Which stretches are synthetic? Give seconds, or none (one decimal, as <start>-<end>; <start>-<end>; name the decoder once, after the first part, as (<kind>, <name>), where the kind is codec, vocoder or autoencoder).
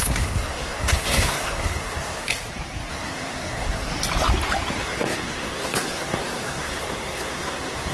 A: 0.0-2.3 (codec, SNAC); 2.9-3.9; 4.8-7.9